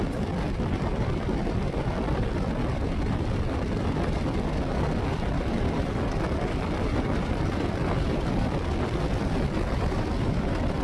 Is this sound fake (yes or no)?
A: yes